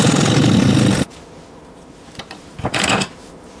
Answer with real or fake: real